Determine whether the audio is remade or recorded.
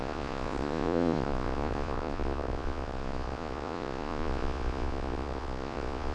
remade